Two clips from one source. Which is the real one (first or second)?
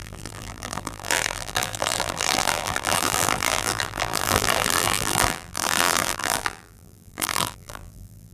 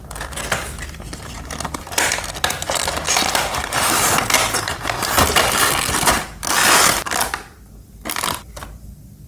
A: second